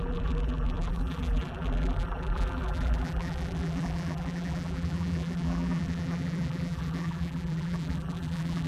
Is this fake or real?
fake